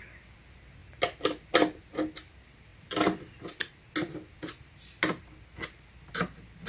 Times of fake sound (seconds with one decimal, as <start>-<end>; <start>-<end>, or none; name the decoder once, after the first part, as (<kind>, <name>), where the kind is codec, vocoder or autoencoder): 0.8-1.8 (vocoder, BigVGAN v2); 2.7-3.6